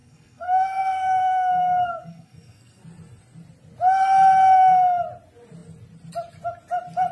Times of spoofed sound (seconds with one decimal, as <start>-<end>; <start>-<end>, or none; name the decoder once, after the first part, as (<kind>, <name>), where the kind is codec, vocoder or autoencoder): 0.0-2.8 (codec, SNAC)